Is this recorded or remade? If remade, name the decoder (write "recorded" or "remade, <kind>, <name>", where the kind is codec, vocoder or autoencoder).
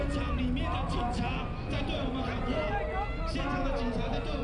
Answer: recorded